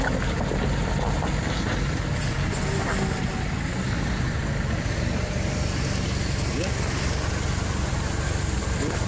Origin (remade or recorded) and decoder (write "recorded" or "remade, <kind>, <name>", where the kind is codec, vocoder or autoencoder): recorded